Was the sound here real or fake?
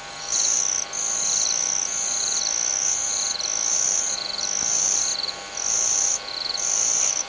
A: real